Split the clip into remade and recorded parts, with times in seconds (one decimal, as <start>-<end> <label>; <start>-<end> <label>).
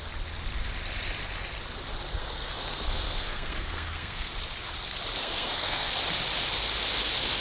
0.0-2.2 recorded; 2.2-4.3 remade; 4.3-5.2 recorded; 5.2-5.9 remade; 5.9-7.4 recorded